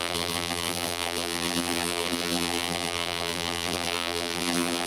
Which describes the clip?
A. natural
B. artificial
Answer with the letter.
B